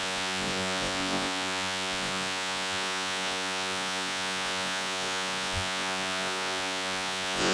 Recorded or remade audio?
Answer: remade